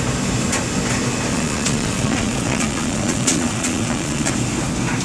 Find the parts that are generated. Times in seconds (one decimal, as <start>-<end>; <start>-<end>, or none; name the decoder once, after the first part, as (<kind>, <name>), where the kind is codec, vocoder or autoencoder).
1.3-4.3 (vocoder, Vocos)